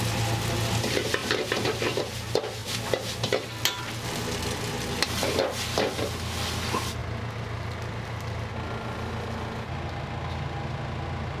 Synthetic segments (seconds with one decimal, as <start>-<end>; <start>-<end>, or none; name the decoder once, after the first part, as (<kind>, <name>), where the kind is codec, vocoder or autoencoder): 1.2-2.0 (vocoder, BigVGAN v2)